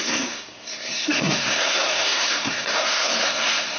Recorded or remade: remade